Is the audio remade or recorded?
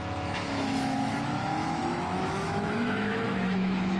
remade